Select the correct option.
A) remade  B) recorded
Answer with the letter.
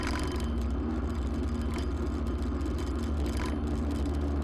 B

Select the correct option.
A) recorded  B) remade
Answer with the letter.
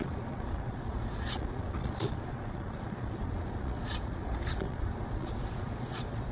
B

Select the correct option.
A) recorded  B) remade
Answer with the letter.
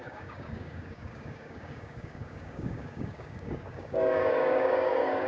B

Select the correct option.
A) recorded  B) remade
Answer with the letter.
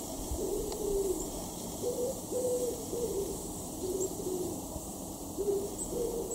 B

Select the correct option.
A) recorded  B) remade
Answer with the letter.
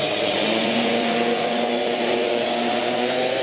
B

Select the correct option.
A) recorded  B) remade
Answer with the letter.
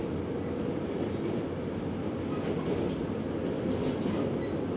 A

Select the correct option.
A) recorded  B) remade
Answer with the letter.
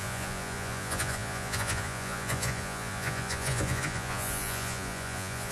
B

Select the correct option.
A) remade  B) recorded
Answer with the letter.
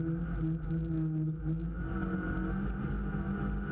B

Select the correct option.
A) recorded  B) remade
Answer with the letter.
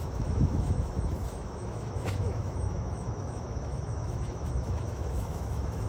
B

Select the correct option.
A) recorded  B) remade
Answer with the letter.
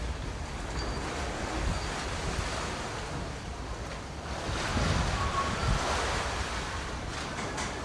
A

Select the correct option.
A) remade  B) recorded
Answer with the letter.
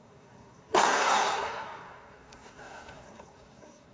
A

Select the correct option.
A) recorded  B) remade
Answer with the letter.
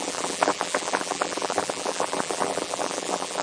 B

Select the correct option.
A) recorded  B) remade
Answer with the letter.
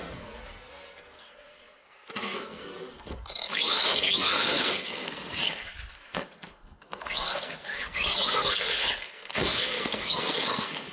B